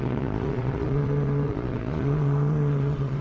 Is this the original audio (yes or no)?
no